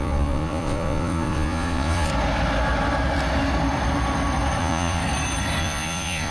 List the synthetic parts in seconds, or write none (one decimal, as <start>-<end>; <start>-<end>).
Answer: 0.0-2.1; 4.6-5.0; 5.6-6.3